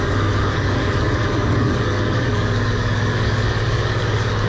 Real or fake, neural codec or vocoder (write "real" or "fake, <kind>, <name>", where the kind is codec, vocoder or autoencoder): fake, codec, DAC